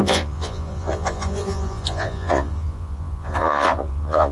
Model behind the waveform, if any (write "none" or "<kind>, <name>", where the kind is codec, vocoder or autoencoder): vocoder, Vocos